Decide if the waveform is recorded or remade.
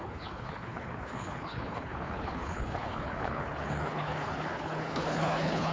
remade